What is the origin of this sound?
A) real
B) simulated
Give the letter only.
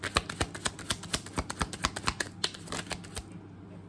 A